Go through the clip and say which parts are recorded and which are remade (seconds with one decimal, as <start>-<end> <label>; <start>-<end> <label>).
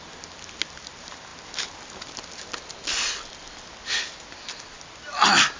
0.0-5.6 recorded